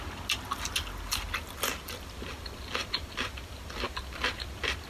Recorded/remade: recorded